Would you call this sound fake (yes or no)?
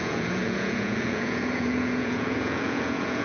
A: yes